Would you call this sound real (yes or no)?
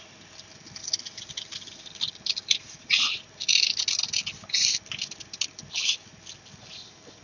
yes